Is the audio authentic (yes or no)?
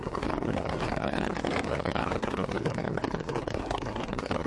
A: no